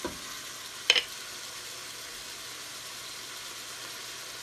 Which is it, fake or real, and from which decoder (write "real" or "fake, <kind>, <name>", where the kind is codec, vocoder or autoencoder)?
real